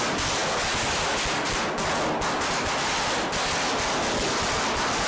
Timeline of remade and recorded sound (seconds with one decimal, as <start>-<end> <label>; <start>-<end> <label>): 0.0-5.1 recorded